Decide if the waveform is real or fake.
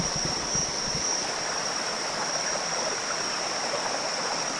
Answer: fake